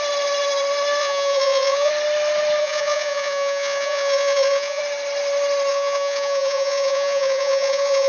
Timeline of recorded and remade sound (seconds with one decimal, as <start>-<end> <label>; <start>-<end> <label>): 0.0-1.0 recorded; 1.0-1.9 remade; 1.9-2.6 recorded; 2.6-4.8 remade; 4.8-5.7 recorded; 5.7-8.1 remade